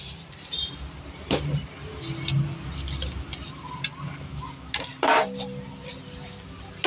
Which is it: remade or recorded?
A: recorded